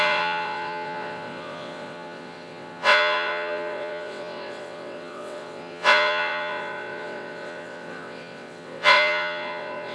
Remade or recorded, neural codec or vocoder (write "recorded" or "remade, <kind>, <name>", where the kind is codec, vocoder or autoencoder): remade, vocoder, WaveNeXt